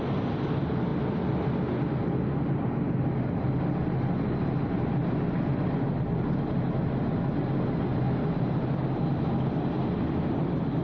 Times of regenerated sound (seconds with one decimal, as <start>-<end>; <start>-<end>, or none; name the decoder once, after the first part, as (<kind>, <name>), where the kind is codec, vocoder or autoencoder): none